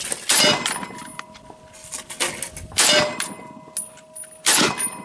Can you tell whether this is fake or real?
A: real